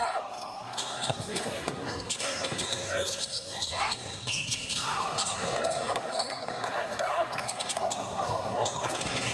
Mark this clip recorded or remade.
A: remade